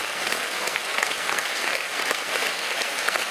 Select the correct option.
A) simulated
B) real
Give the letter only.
A